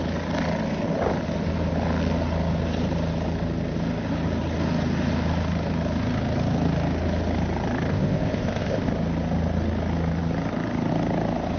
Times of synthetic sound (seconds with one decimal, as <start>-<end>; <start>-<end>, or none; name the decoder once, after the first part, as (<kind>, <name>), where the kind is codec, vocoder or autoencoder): 7.9-8.9 (codec, ZipCodec)